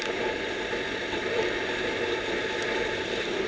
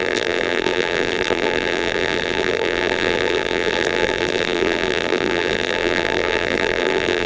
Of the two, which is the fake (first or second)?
second